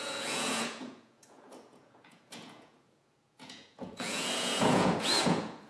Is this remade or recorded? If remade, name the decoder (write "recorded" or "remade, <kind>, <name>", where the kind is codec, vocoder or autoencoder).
remade, vocoder, Vocos